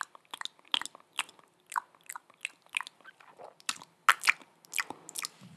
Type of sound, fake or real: real